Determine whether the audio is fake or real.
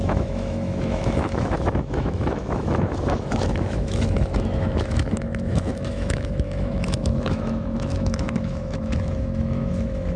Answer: fake